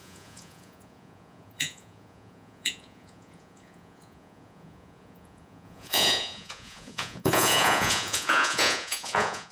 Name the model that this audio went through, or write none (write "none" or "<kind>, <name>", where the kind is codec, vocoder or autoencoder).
vocoder, Vocos